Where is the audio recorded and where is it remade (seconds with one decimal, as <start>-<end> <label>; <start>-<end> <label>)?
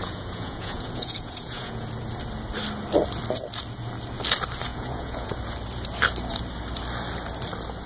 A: 0.0-1.9 remade; 1.9-4.7 recorded; 4.7-5.3 remade; 5.3-7.9 recorded